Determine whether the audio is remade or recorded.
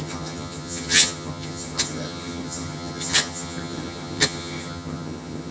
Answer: remade